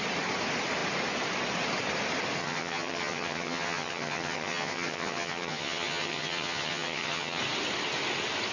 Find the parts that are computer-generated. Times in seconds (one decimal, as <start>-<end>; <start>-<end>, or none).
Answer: 2.4-7.4